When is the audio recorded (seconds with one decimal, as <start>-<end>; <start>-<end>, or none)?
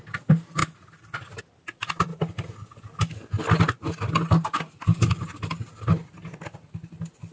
0.0-7.3